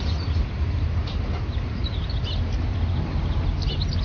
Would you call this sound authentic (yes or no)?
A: yes